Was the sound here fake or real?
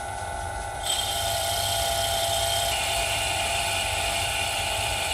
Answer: fake